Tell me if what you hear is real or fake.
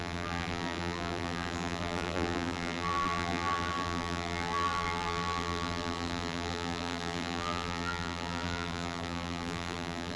fake